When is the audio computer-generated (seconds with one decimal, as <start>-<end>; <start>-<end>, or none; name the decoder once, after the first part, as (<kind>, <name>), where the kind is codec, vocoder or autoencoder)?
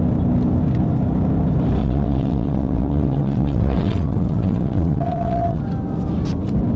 1.8-5.6 (vocoder, WaveNeXt)